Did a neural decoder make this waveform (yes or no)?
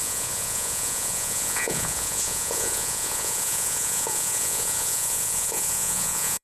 yes